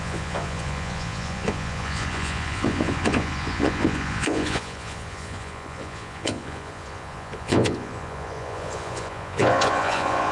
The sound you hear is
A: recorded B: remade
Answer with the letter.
B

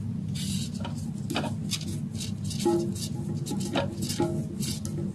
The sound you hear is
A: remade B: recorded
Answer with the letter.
B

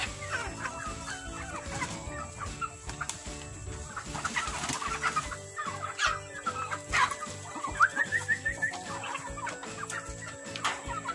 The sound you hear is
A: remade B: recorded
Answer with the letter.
B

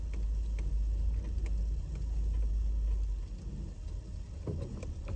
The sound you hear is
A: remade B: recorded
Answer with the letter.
B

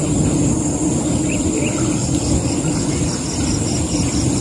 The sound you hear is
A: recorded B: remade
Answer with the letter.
A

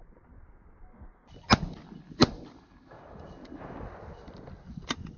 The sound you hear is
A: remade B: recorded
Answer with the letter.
B